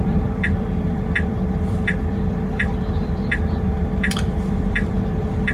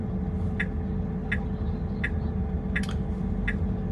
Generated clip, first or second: first